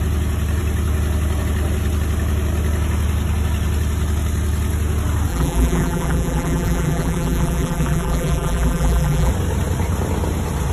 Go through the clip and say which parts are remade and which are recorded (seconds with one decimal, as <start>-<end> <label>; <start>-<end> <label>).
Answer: 0.0-5.3 recorded; 5.3-9.3 remade; 9.3-10.7 recorded